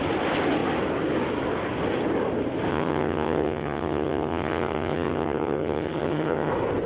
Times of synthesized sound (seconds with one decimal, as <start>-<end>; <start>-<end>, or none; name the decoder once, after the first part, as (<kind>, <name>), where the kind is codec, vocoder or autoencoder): 2.7-6.5 (vocoder, HiFi-GAN)